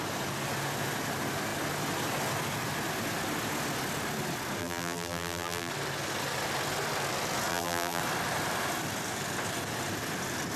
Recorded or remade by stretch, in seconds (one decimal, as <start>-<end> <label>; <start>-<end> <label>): 0.0-4.6 recorded; 4.6-5.7 remade; 5.7-7.5 recorded; 7.5-8.0 remade; 8.0-10.6 recorded